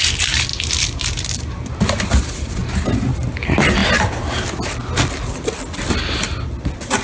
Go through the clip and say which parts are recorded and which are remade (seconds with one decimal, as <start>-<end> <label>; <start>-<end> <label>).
0.0-7.0 recorded